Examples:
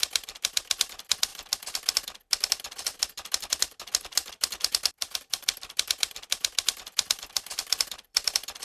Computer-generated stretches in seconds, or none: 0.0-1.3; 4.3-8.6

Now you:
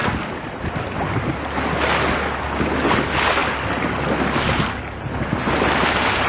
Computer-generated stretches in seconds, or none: 0.0-1.1

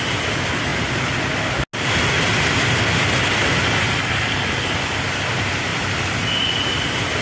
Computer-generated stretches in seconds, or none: none

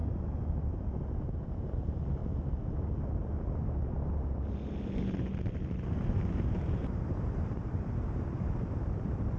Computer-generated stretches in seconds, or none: 0.6-2.2; 5.0-9.4

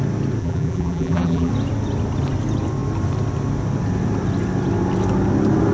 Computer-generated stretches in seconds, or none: 0.4-1.5